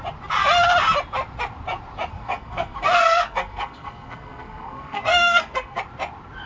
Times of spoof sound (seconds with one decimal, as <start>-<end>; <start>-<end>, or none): 2.1-5.8